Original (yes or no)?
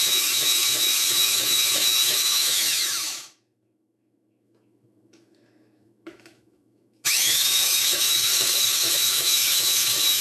no